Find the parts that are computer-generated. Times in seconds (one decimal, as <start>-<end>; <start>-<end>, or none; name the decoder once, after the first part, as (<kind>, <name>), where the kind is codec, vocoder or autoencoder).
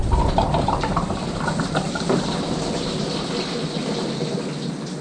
0.0-3.0 (vocoder, BigVGAN v2); 3.8-4.4